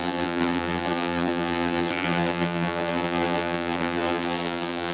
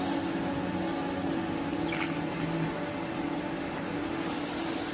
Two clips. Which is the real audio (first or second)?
second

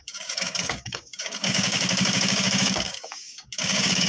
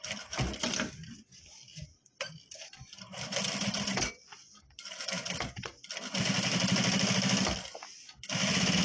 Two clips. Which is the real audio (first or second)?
second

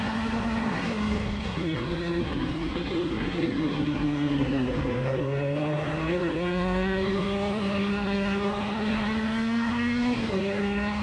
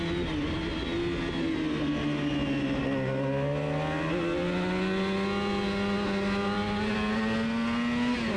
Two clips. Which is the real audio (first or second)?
second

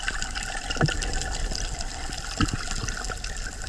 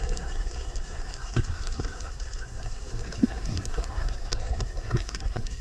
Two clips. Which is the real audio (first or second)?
first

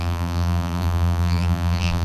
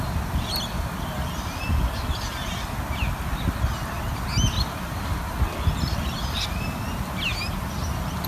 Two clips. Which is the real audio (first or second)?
second